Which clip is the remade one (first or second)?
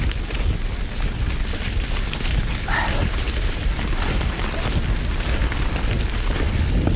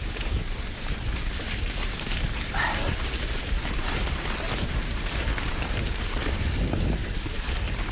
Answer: second